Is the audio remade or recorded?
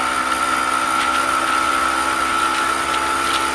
recorded